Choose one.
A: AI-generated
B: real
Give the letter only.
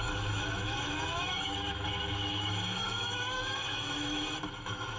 A